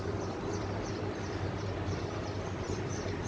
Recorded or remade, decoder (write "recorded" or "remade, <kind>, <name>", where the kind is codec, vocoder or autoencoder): recorded